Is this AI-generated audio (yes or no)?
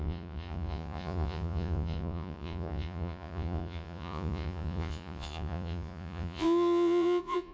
yes